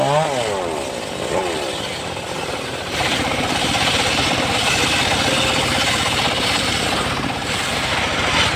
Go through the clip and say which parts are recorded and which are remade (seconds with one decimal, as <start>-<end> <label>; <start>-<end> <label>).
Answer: 0.0-1.9 recorded; 1.9-4.1 remade; 4.1-8.6 recorded